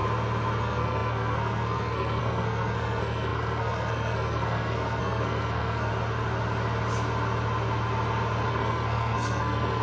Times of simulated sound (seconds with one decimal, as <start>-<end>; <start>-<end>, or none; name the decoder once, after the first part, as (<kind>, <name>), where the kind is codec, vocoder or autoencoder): 0.6-5.9 (codec, SNAC); 8.5-9.8